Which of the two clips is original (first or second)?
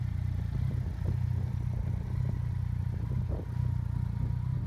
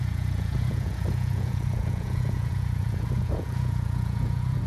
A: first